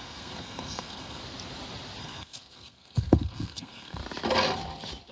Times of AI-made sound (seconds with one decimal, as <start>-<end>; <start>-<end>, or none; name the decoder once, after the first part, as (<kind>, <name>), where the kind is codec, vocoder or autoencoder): 0.0-1.2 (codec, SNAC); 2.0-4.0